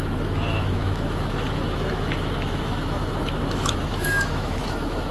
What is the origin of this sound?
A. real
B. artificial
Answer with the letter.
B